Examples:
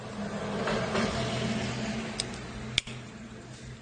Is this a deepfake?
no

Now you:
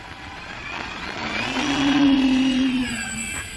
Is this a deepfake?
yes